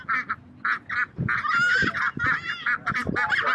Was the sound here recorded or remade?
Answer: recorded